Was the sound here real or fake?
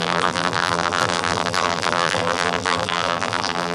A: fake